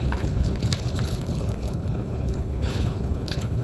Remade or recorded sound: remade